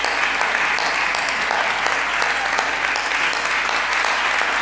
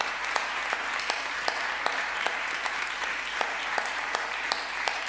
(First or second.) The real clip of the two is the first